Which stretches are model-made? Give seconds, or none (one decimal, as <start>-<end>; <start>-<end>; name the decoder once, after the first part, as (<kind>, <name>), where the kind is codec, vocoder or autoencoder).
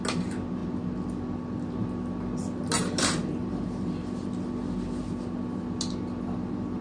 none